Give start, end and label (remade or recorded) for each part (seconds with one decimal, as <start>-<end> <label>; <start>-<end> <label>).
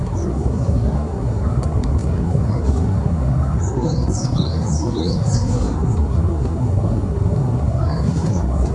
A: 0.0-8.7 remade